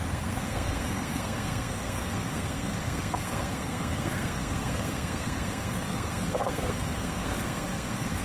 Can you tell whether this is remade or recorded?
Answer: remade